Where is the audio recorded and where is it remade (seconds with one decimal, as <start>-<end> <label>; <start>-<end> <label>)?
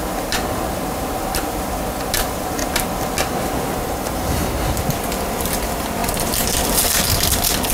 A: 0.0-2.6 remade; 2.6-3.6 recorded; 3.6-7.7 remade